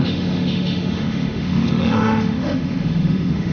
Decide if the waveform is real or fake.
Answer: fake